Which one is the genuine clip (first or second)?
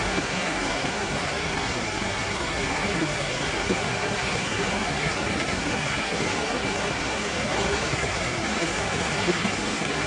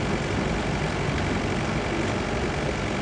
second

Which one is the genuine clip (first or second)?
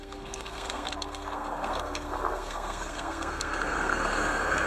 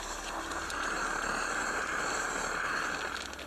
second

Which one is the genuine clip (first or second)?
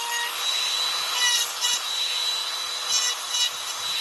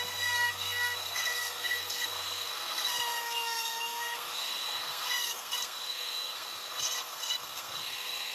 first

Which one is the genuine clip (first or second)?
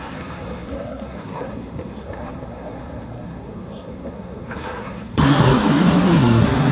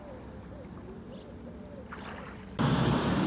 second